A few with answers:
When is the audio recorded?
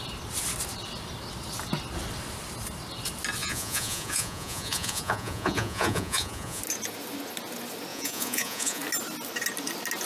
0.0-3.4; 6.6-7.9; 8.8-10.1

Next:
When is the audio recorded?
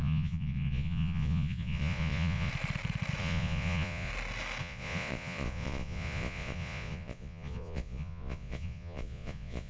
2.5-3.2; 4.1-4.6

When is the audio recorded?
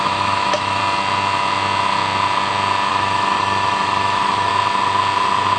0.8-2.9; 4.5-5.6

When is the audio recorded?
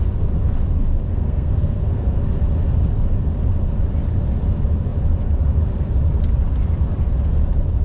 0.0-1.1; 2.2-7.8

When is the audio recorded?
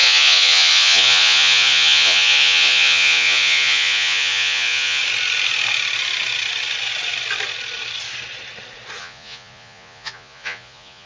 5.0-9.0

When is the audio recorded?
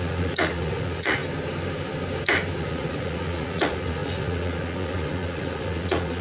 1.2-2.6